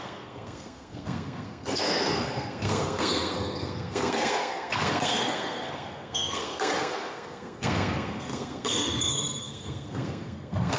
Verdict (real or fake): fake